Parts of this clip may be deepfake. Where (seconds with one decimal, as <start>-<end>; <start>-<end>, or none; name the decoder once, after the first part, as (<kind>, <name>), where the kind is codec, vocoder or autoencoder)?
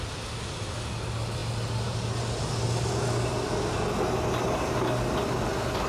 none